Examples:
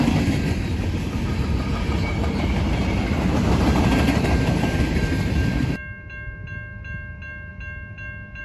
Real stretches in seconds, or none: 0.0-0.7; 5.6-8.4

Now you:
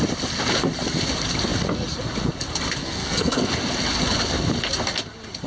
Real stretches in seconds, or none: 0.0-2.8; 3.6-5.5

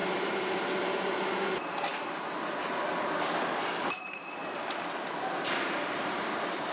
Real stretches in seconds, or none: 0.0-6.7

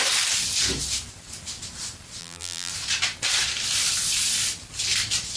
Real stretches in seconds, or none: 0.0-2.2; 2.7-5.4

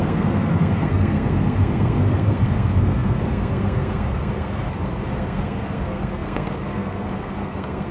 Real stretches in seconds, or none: none